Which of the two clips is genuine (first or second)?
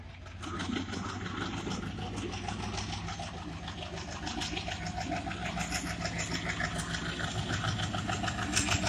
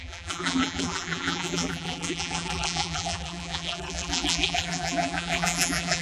first